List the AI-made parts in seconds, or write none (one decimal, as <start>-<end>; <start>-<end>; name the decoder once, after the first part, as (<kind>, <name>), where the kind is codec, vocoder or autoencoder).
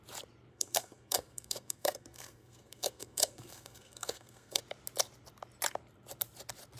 0.5-4.6 (codec, SNAC)